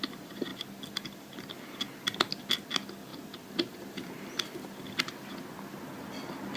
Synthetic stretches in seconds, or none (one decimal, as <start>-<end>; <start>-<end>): 0.5-1.5; 3.1-4.0